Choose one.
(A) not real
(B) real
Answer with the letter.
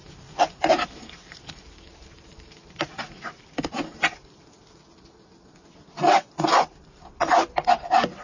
A